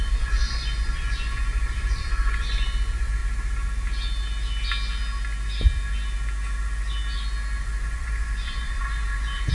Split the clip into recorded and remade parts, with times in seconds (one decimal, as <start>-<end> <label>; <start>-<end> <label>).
0.0-3.2 remade; 3.2-7.6 recorded; 7.6-9.5 remade